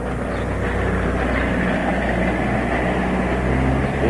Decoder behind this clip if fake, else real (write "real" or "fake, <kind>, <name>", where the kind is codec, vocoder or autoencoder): real